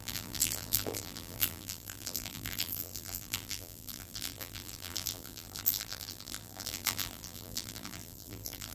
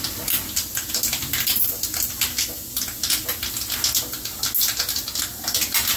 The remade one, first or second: first